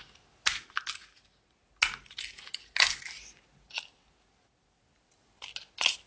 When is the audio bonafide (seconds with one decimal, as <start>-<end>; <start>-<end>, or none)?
0.0-6.1